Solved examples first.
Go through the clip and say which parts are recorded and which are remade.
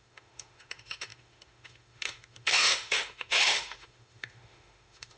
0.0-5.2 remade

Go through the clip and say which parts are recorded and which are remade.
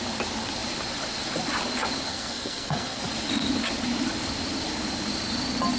0.0-2.1 recorded; 2.1-3.0 remade; 3.0-5.8 recorded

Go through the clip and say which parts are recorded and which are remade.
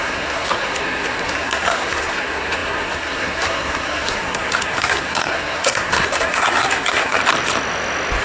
0.0-7.2 remade; 7.2-8.2 recorded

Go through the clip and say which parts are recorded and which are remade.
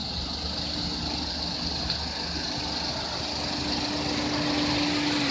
0.0-5.3 recorded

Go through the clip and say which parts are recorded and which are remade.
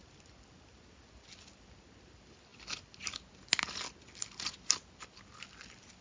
0.0-6.0 recorded